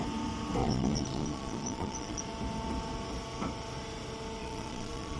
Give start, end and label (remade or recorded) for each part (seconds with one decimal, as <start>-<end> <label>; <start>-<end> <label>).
0.0-0.6 recorded; 0.6-2.2 remade; 2.2-4.4 recorded; 4.4-5.2 remade